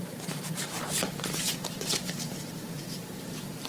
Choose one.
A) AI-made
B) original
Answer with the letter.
A